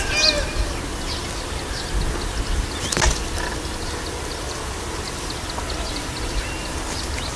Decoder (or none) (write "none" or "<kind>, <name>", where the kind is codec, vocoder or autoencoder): none